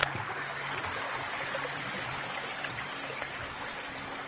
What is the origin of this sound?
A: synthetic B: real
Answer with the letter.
A